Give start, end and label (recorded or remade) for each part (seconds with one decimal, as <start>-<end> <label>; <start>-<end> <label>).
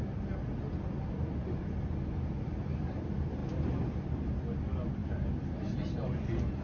0.0-6.6 recorded